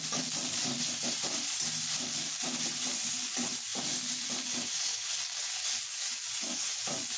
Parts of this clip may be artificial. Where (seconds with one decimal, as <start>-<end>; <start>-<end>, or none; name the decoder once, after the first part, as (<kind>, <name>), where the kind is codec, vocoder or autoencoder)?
none